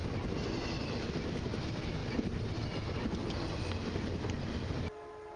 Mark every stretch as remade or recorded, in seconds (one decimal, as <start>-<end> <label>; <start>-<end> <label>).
0.0-0.5 remade; 0.5-5.4 recorded